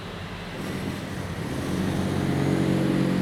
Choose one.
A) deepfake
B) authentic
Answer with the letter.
B